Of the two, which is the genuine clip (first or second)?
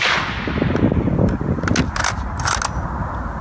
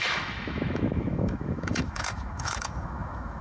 first